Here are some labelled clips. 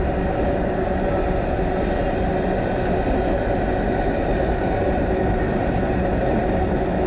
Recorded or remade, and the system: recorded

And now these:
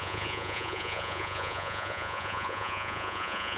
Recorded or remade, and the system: remade, vocoder, Vocos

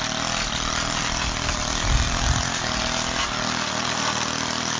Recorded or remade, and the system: recorded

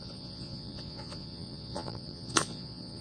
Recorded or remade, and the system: remade, vocoder, Vocos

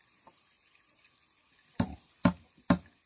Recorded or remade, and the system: recorded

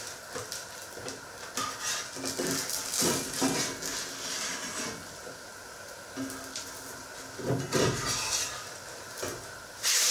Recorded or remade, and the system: recorded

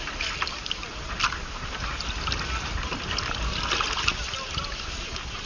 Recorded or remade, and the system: recorded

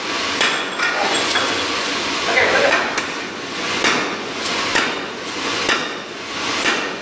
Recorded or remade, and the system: remade, vocoder, Vocos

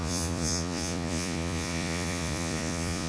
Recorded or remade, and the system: remade, vocoder, Vocos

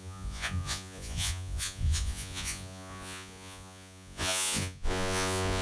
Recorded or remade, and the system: remade, vocoder, Vocos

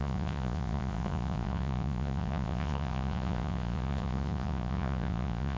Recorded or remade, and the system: remade, vocoder, Vocos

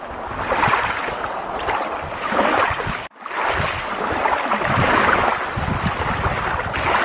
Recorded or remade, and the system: recorded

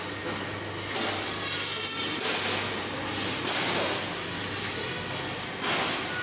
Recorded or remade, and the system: recorded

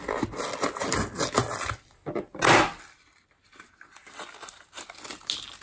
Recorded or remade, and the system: recorded